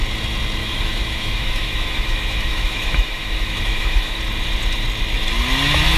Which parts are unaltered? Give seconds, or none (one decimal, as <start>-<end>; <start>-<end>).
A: 0.0-0.6; 4.2-6.0